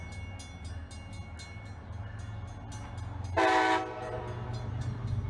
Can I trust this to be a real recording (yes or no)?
yes